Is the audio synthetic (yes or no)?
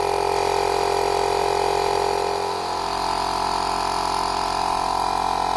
no